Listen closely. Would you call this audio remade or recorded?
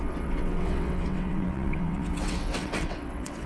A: remade